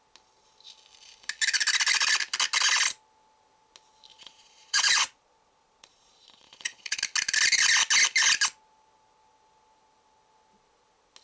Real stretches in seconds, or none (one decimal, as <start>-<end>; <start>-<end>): 0.0-4.1; 7.0-11.2